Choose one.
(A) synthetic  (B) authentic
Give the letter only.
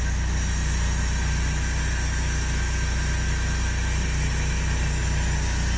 B